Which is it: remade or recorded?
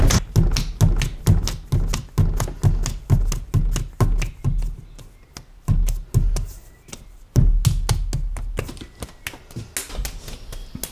recorded